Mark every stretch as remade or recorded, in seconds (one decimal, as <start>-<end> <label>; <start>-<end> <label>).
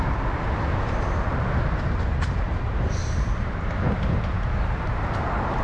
0.0-3.0 recorded; 3.0-3.7 remade; 3.7-5.6 recorded